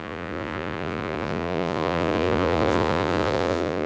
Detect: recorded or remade remade